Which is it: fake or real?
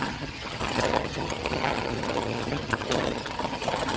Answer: fake